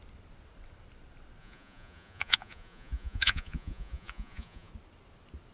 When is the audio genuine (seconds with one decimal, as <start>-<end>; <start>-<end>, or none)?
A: 0.0-1.4; 4.7-5.5